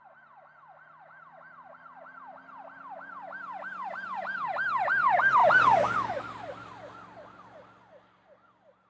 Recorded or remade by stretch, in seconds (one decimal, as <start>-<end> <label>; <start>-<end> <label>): 0.0-8.9 recorded